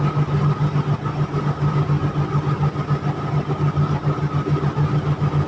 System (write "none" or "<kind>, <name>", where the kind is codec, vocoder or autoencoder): none